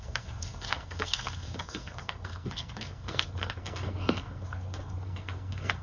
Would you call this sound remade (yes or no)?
yes